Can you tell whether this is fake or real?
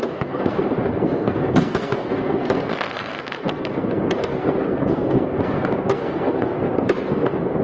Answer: fake